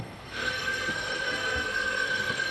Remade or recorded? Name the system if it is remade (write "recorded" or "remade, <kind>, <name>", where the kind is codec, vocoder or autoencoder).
remade, codec, SNAC